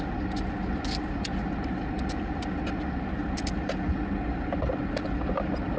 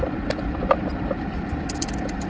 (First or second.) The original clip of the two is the first